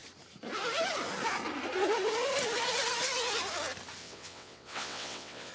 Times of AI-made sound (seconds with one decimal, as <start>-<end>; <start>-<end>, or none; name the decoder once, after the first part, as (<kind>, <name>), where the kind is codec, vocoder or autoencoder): 4.0-5.5 (vocoder, WaveNeXt)